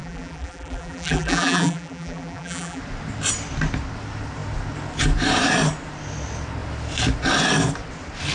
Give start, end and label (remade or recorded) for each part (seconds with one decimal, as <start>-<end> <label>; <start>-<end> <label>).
0.0-2.8 remade; 2.8-8.3 recorded